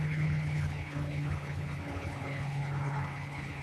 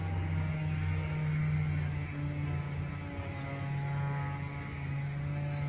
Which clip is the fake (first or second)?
first